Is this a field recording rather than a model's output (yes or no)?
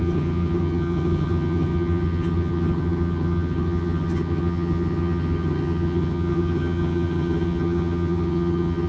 no